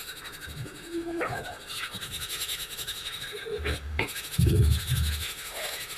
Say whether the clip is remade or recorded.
remade